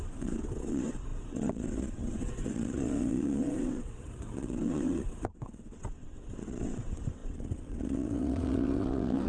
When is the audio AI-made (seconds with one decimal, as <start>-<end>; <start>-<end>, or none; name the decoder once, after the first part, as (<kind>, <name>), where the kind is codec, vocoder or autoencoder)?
0.0-9.3 (vocoder, WaveNeXt)